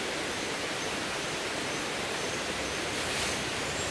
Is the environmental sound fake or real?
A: real